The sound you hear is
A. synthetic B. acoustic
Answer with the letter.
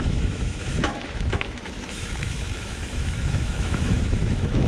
A